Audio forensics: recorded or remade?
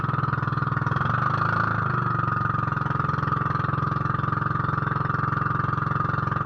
recorded